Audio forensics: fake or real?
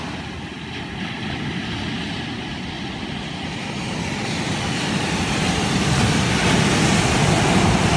real